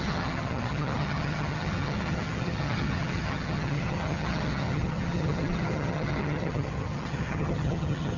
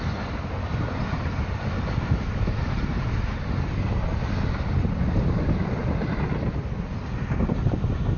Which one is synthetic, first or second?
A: first